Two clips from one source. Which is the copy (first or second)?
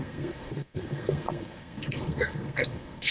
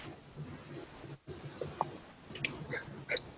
first